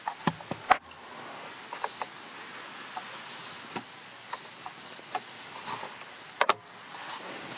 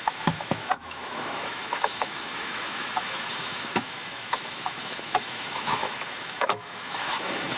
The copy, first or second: second